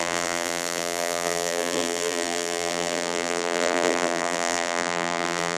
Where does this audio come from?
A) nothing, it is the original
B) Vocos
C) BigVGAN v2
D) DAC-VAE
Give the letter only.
C